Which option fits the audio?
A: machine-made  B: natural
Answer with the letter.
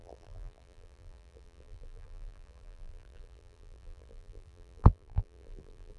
A